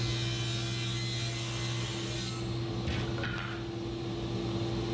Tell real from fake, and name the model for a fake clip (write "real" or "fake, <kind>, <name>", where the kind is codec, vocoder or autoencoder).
real